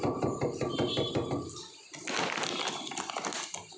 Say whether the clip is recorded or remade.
recorded